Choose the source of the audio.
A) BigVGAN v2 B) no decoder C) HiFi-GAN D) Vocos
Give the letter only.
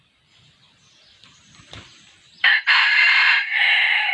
A